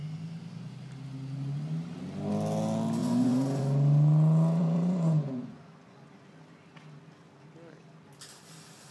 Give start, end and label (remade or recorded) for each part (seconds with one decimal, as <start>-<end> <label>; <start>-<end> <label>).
0.0-3.0 recorded; 3.0-3.6 remade; 3.6-4.6 recorded; 4.6-6.1 remade; 6.1-8.9 recorded